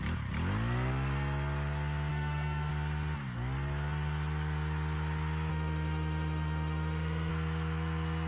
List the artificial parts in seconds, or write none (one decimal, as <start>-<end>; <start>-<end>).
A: 2.1-2.7; 5.5-7.3